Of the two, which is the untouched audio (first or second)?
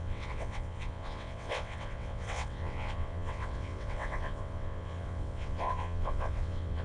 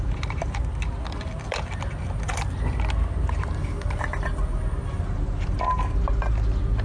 second